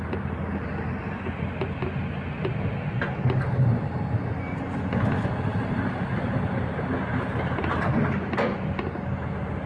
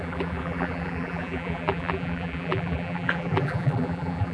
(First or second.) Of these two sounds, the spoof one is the second